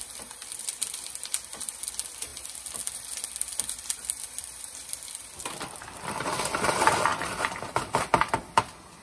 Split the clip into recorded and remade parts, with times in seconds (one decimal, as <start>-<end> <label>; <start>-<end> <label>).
0.0-9.0 remade